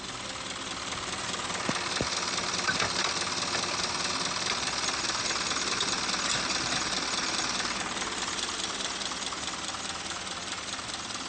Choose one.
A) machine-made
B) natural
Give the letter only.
B